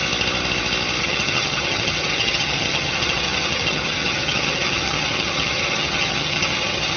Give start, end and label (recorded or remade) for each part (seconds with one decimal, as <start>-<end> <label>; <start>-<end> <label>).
0.0-1.0 recorded; 1.0-7.0 remade